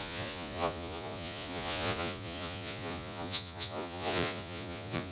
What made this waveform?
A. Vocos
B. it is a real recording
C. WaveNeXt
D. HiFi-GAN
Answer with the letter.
A